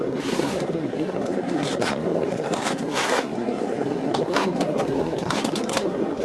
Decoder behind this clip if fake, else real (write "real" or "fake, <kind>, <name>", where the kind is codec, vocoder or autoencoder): fake, codec, SNAC